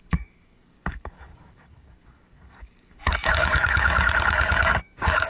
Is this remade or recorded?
remade